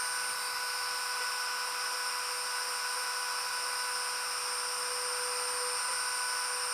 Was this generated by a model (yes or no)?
no